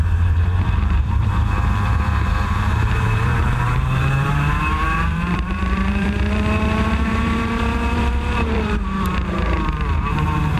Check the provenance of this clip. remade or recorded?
remade